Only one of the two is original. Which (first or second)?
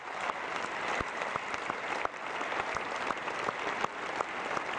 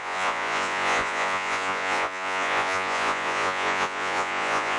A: first